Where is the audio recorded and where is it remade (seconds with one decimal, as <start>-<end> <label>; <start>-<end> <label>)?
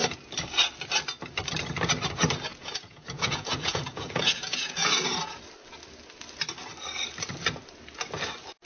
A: 0.0-2.5 recorded; 2.5-4.9 remade; 4.9-8.7 recorded